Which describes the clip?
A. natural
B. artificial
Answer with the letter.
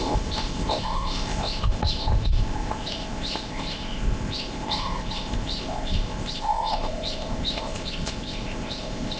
B